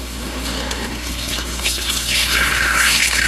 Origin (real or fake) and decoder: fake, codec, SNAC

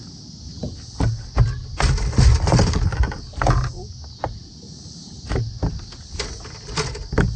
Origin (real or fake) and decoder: real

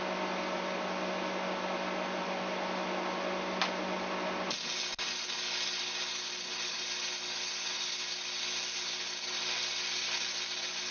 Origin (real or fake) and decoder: real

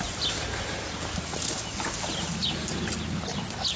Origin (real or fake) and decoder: real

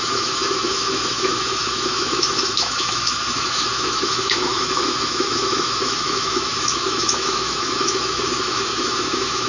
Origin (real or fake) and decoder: fake, autoencoder, DAC-VAE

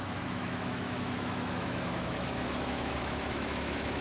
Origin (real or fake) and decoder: fake, autoencoder, DAC-VAE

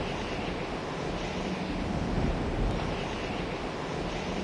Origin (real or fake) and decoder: real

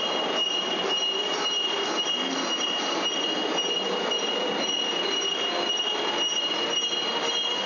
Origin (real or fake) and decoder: real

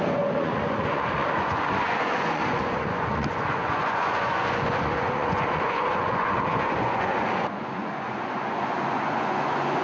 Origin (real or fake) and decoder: fake, vocoder, Vocos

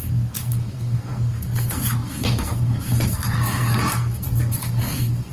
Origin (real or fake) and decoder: fake, codec, SNAC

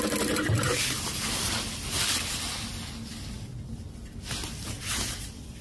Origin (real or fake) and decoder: real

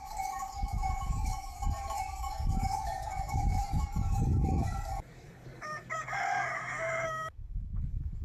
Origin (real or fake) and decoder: fake, codec, DAC